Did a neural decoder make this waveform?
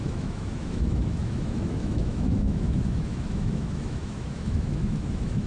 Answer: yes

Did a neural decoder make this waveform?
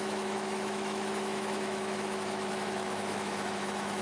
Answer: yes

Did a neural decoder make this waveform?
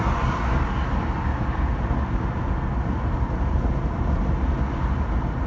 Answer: no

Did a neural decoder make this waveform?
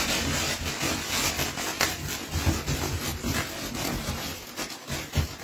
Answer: no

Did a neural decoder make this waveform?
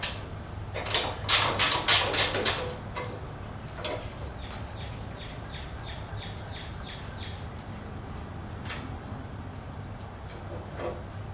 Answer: no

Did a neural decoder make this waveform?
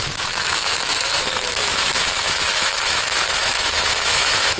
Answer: yes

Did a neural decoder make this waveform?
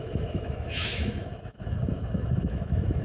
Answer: yes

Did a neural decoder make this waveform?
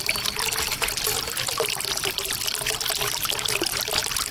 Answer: no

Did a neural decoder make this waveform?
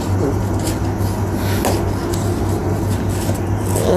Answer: no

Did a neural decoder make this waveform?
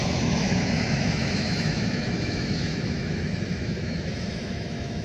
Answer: yes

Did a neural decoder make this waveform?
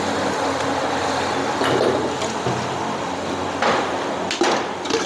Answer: no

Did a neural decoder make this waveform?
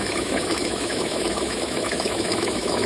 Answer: yes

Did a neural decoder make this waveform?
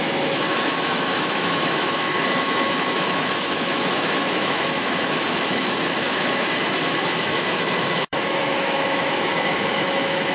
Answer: yes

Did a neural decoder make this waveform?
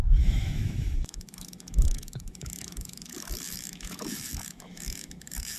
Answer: yes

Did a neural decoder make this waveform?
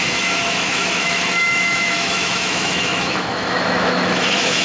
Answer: yes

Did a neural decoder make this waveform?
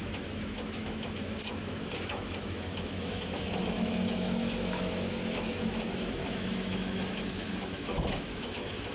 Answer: yes